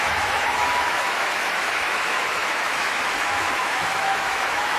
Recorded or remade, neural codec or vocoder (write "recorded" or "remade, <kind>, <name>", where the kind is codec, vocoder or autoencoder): remade, autoencoder, DAC-VAE